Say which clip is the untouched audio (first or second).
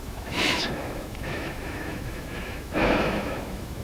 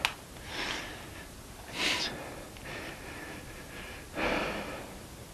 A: second